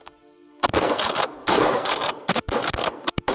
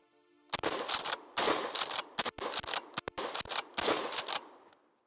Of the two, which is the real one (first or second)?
second